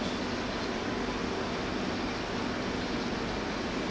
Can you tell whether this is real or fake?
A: real